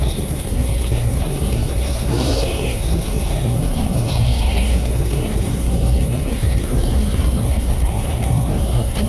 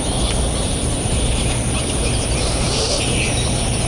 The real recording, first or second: second